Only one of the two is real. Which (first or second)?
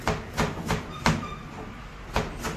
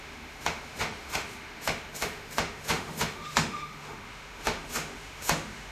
first